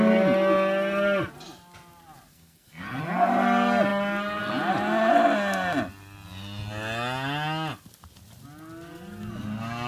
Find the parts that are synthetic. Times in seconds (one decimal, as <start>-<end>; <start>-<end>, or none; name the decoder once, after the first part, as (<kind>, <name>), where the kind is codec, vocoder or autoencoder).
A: 2.3-3.0 (codec, SNAC)